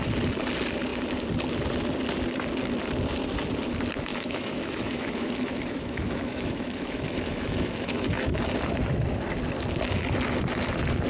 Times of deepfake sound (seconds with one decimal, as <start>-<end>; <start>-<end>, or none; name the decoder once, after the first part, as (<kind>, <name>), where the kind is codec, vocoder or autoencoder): 4.1-8.5 (autoencoder, DAC-VAE)